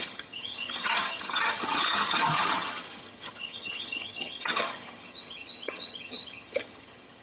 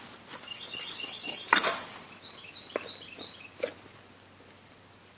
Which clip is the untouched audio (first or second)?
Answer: second